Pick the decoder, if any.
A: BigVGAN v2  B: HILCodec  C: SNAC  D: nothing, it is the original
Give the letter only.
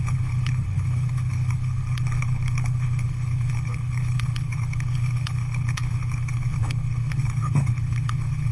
B